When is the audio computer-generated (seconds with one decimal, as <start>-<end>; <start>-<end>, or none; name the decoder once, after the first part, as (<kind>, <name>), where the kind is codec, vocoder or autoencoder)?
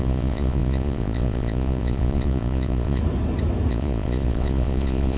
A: 0.0-3.0 (vocoder, Vocos); 3.7-5.2